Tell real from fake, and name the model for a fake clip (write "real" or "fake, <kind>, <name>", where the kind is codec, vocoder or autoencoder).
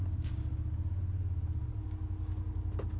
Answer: real